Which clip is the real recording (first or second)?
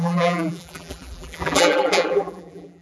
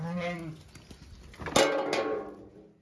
second